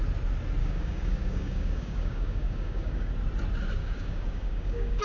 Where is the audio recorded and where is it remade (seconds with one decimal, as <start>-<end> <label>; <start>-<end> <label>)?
0.0-0.6 recorded; 0.6-3.1 remade; 3.1-3.8 recorded; 3.8-5.0 remade